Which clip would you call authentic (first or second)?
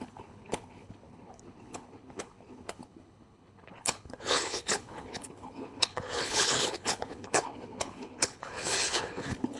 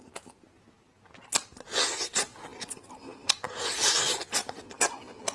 second